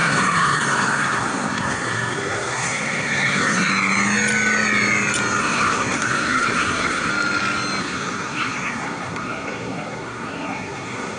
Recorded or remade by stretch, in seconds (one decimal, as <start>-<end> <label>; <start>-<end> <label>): 0.0-3.7 remade; 3.7-5.4 recorded; 5.4-7.1 remade; 7.1-7.8 recorded; 7.8-11.2 remade